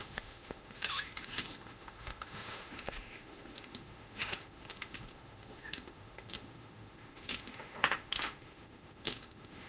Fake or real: fake